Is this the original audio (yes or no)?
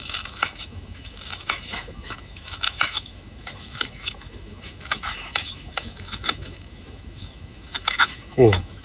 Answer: no